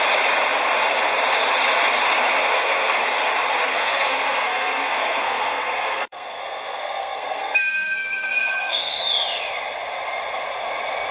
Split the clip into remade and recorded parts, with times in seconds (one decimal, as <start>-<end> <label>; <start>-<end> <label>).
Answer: 0.0-2.5 recorded; 2.5-3.0 remade; 3.0-3.7 recorded; 3.7-9.0 remade; 9.0-11.1 recorded